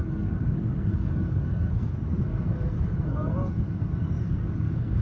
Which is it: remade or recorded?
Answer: remade